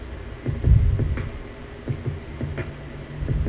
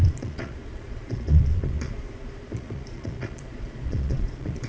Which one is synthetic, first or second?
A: second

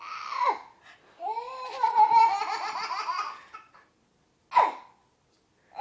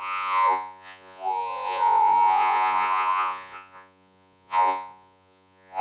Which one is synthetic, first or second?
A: second